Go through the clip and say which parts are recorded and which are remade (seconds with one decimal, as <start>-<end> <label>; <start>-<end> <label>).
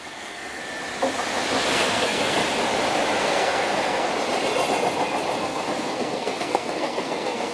0.0-0.6 remade; 0.6-1.7 recorded; 1.7-2.4 remade; 2.4-3.2 recorded; 3.2-4.1 remade; 4.1-5.4 recorded; 5.4-7.5 remade